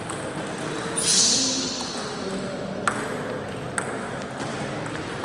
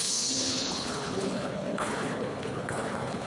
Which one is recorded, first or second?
first